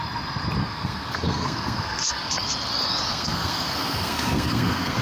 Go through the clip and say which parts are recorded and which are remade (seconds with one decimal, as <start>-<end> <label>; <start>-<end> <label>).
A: 0.0-0.6 recorded; 0.6-2.3 remade; 2.3-3.1 recorded; 3.1-5.0 remade